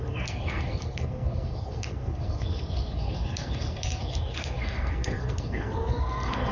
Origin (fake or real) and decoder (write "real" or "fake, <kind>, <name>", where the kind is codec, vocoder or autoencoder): fake, codec, SNAC